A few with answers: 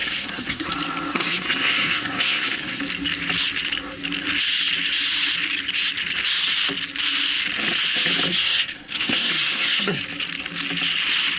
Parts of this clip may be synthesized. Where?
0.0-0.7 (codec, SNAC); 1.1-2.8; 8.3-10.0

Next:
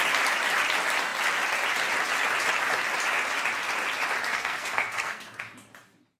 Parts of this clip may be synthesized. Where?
4.3-5.4 (codec, SNAC)

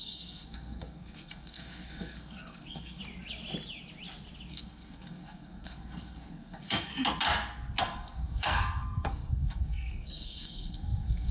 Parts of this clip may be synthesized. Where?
0.0-3.0 (codec, SNAC); 4.5-6.9; 7.8-11.3

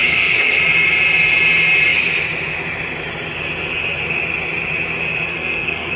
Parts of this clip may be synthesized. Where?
0.0-0.6 (codec, SNAC); 5.3-6.0

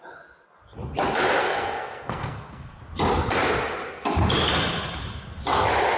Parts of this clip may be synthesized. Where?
1.4-2.8 (codec, SNAC)

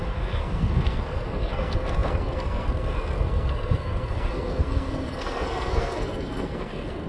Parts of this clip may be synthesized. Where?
0.0-7.1 (codec, SNAC)